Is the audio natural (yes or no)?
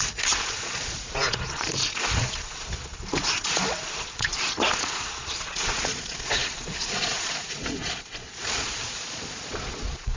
no